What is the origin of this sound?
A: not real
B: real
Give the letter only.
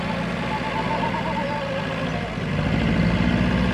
B